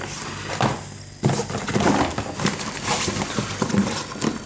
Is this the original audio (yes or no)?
yes